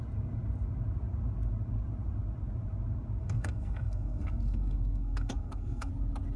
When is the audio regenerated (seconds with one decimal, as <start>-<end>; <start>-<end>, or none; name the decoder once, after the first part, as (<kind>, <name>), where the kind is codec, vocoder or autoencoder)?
3.2-5.9 (codec, SNAC)